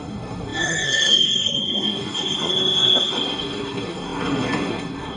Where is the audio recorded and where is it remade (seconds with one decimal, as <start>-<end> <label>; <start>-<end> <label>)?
0.0-5.2 remade